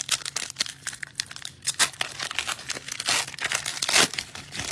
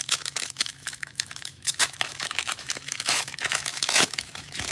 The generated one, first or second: second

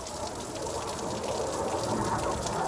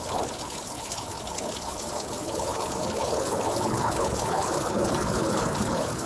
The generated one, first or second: second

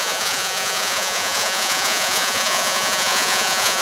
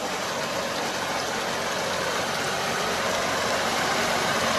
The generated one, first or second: first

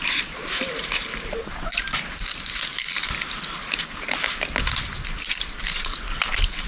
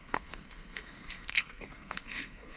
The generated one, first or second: second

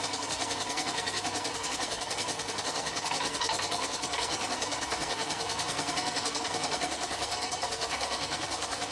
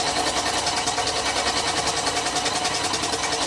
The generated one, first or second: first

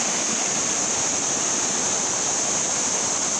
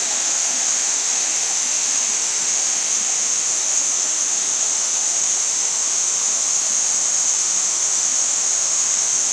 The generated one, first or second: second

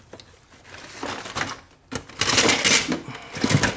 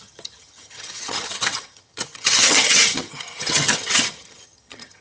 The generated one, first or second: second